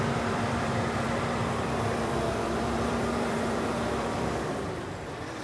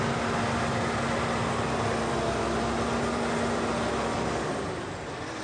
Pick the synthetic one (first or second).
first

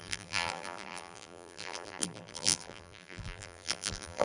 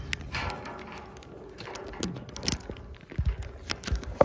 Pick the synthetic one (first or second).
first